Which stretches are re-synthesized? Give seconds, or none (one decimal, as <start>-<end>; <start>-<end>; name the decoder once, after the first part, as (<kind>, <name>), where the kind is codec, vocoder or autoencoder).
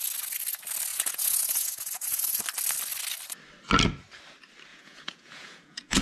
0.9-2.4 (vocoder, Vocos); 4.7-6.0